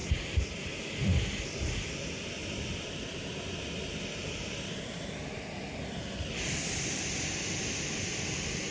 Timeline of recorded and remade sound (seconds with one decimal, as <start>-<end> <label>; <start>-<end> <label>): 0.0-1.4 remade; 1.4-2.4 recorded; 2.4-3.2 remade; 3.2-4.2 recorded; 4.2-5.5 remade; 5.5-8.7 recorded